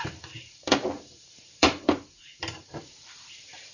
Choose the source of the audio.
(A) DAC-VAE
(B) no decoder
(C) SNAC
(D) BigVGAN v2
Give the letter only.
D